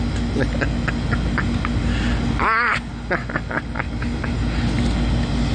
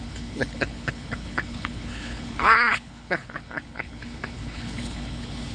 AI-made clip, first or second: second